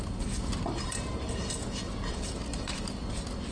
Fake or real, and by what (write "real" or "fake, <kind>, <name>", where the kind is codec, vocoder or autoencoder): real